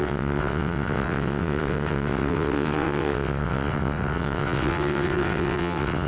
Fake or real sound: fake